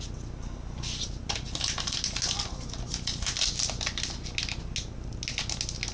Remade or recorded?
recorded